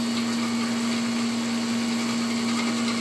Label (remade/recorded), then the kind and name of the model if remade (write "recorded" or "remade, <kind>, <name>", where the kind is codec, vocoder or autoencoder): recorded